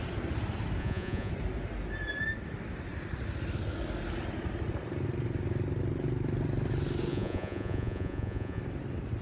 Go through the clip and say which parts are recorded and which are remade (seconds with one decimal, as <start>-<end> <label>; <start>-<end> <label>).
0.0-0.8 recorded; 0.8-1.3 remade; 1.3-7.1 recorded; 7.1-8.6 remade; 8.6-9.2 recorded